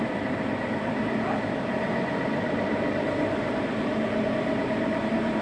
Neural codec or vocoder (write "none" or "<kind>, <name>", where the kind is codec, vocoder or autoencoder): vocoder, BigVGAN v2